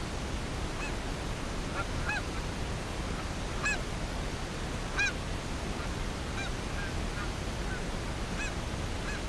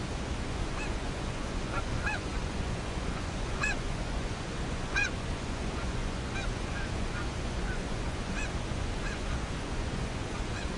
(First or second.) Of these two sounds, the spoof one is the second